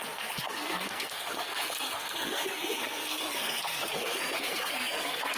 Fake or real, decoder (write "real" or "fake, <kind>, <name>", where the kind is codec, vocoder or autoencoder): fake, codec, SNAC